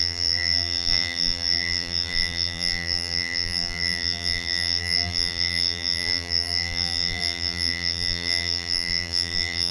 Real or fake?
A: fake